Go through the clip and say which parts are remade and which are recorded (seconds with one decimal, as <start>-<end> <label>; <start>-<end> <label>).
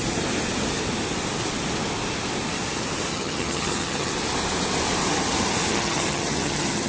0.0-3.1 recorded; 3.1-4.1 remade; 4.1-5.7 recorded; 5.7-6.9 remade